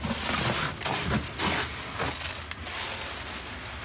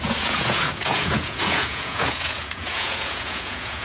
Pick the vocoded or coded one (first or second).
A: second